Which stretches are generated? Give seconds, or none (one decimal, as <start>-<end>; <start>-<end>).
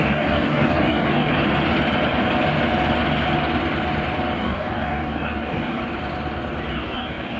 0.0-1.3; 4.4-5.8; 6.7-7.4